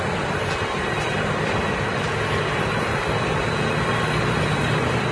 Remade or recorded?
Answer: recorded